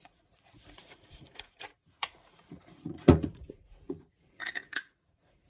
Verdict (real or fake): fake